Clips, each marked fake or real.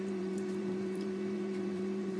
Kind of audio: fake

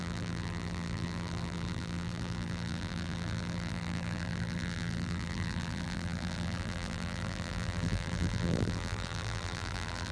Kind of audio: fake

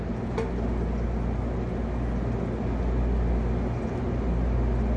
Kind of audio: real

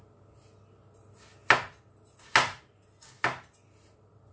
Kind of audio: real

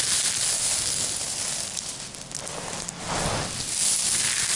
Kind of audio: real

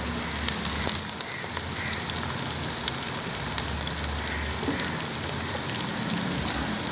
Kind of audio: real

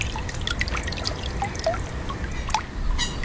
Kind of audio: real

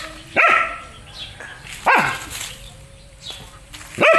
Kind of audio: real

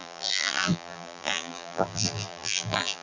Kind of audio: fake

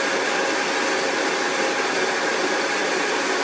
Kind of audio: real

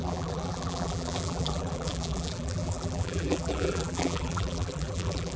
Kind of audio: fake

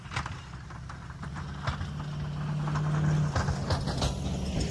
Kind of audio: real